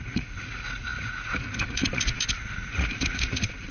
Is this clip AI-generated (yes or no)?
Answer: yes